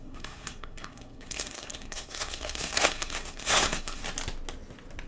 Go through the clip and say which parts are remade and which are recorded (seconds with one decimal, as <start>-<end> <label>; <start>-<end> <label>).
0.0-4.0 remade; 4.0-5.1 recorded